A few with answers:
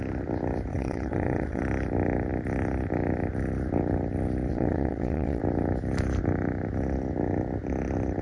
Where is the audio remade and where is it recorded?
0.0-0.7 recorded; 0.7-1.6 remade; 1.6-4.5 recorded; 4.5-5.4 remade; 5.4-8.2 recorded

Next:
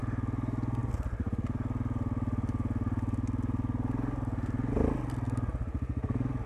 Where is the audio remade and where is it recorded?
0.0-6.5 recorded

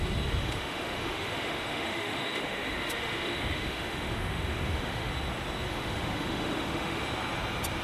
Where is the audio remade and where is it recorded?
0.0-0.4 recorded; 0.4-5.1 remade; 5.1-5.7 recorded; 5.7-7.0 remade; 7.0-7.8 recorded

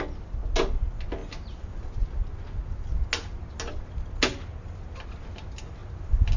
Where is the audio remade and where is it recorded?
0.0-6.4 recorded

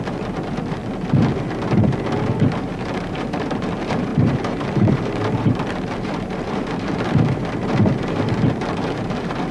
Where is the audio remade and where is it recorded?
0.0-0.8 remade; 0.8-2.6 recorded; 2.6-7.4 remade; 7.4-7.9 recorded; 7.9-9.5 remade